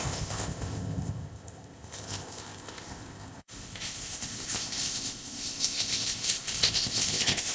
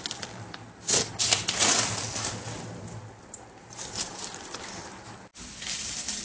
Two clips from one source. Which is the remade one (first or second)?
first